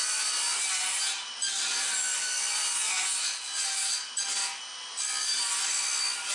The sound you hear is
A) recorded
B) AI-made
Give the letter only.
A